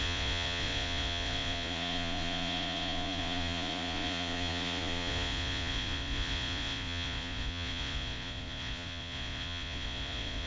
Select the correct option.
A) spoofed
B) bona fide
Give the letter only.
A